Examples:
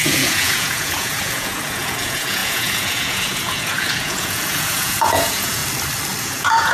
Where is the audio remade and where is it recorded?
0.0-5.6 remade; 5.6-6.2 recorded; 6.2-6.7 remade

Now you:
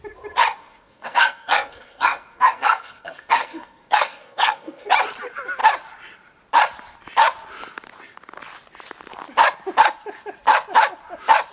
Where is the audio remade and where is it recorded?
0.0-0.6 recorded; 0.6-4.9 remade; 4.9-11.5 recorded

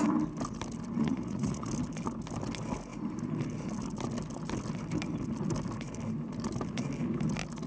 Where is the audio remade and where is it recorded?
0.0-1.0 recorded; 1.0-1.7 remade; 1.7-7.7 recorded

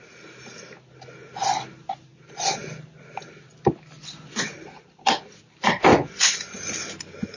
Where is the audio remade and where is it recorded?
0.0-5.9 recorded; 5.9-6.6 remade; 6.6-7.4 recorded

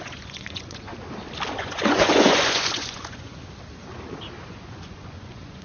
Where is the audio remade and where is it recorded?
0.0-0.9 remade; 0.9-1.6 recorded; 1.6-3.3 remade; 3.3-4.5 recorded; 4.5-5.6 remade

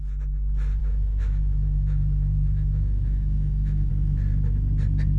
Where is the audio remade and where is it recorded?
0.0-0.8 recorded; 0.8-3.9 remade; 3.9-5.2 recorded

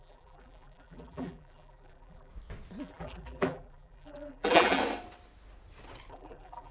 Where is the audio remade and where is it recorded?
0.0-2.3 remade; 2.3-2.8 recorded; 2.8-4.8 remade; 4.8-6.1 recorded; 6.1-6.7 remade